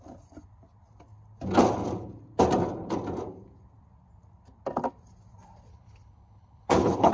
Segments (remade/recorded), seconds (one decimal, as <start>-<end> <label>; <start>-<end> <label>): 0.0-5.7 recorded; 5.7-7.1 remade